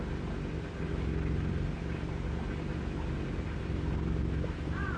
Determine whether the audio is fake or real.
real